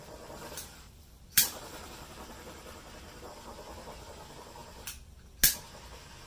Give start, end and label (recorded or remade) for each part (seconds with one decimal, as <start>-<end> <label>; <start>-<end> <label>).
0.0-2.8 remade; 2.8-6.3 recorded